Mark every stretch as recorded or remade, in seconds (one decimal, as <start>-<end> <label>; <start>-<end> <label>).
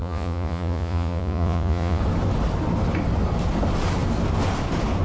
0.0-2.0 remade; 2.0-5.0 recorded